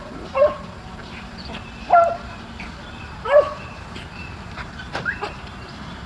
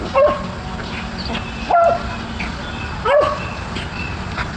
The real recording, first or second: second